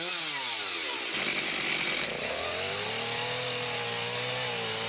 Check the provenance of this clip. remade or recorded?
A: recorded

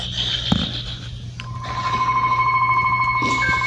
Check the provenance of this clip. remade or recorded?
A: recorded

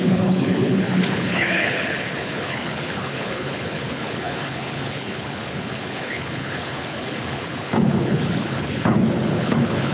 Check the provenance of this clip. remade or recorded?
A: remade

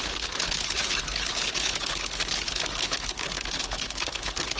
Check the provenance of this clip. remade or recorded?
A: remade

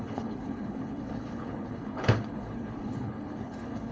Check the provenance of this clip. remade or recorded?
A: remade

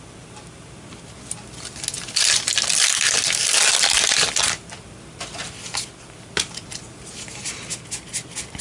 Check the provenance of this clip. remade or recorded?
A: recorded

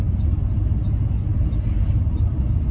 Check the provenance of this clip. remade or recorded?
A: recorded